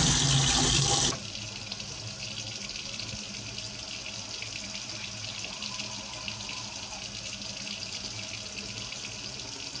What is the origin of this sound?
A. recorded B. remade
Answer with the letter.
A